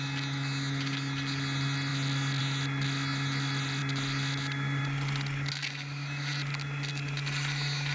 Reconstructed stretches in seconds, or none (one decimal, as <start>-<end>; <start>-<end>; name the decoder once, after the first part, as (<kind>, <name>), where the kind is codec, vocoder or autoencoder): none